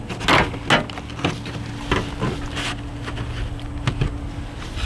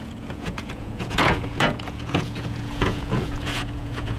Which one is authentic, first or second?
first